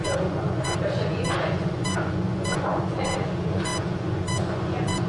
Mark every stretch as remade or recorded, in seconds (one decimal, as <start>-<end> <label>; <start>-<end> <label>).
0.0-5.1 remade